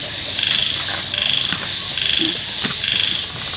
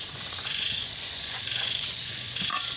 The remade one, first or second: second